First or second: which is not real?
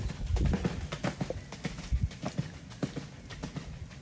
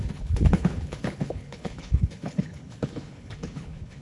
second